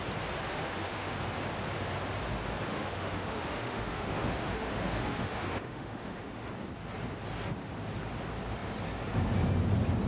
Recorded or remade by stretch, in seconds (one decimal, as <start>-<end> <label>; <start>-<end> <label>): 0.0-0.5 recorded; 0.5-1.2 remade; 1.2-2.7 recorded; 2.7-6.5 remade; 6.5-10.1 recorded

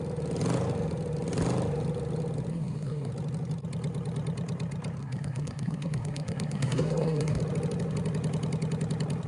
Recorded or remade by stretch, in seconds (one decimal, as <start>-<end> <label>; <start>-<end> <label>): 0.0-2.5 recorded; 2.5-3.1 remade; 3.1-5.0 recorded; 5.0-7.4 remade; 7.4-9.3 recorded

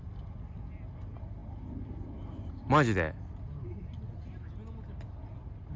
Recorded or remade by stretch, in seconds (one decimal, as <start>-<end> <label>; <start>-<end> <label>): 0.0-5.8 recorded

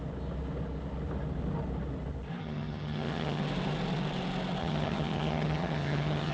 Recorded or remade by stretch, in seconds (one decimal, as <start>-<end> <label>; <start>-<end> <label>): 0.0-2.4 recorded; 2.4-3.4 remade; 3.4-4.6 recorded; 4.6-6.3 remade

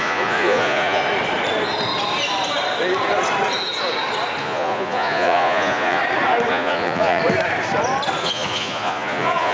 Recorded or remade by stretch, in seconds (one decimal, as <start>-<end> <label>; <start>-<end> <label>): 0.0-1.0 remade; 1.0-4.4 recorded; 4.4-6.0 remade; 6.0-6.5 recorded; 6.5-7.2 remade; 7.2-8.2 recorded; 8.2-9.5 remade

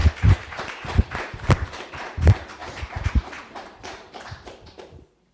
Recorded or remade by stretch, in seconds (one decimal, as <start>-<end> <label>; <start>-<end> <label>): 0.0-5.3 remade

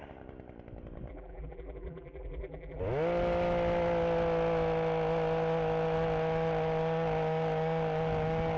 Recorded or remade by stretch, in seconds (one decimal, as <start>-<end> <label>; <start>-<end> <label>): 0.0-1.1 recorded; 1.1-2.8 remade; 2.8-8.6 recorded

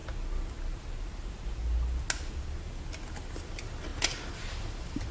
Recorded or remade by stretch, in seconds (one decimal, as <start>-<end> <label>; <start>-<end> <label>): 0.0-5.1 recorded